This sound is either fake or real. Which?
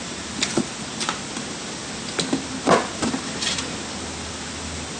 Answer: real